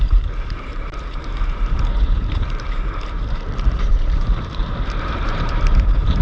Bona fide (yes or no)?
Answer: no